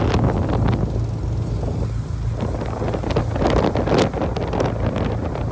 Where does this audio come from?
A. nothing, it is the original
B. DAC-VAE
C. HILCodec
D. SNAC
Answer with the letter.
A